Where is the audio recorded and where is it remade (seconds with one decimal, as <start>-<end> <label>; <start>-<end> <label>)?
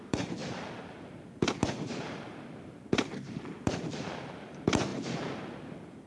0.0-6.1 remade